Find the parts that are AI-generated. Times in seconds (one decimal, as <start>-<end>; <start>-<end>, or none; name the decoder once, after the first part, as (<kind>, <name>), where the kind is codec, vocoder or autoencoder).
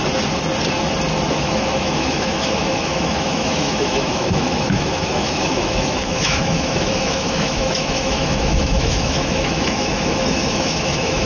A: 1.3-11.3 (autoencoder, DAC-VAE)